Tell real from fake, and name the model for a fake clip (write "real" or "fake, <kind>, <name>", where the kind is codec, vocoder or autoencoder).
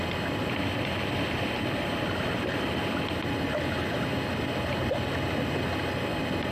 real